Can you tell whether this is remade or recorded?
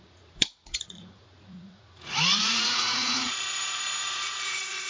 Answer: remade